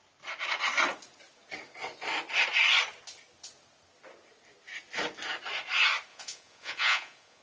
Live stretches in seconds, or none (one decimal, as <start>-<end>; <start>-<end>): 0.0-6.1